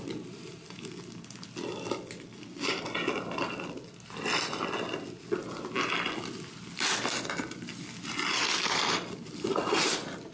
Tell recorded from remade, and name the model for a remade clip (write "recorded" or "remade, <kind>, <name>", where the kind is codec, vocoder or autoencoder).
recorded